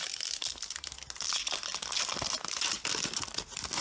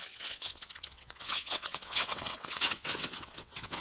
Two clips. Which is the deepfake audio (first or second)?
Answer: second